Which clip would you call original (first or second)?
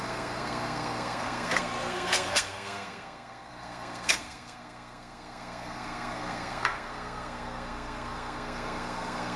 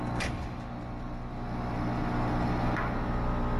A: second